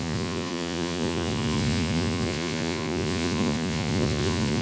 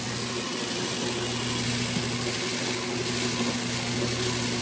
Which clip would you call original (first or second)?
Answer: second